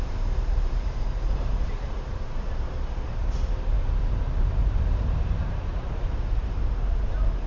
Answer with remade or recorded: remade